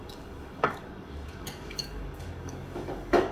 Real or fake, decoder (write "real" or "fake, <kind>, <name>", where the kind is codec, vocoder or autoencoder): fake, codec, DAC